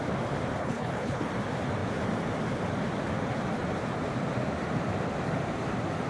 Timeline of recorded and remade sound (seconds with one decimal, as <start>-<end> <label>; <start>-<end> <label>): 0.0-0.6 recorded; 0.6-1.3 remade; 1.3-6.1 recorded